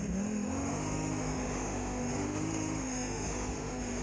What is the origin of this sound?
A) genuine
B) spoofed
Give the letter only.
B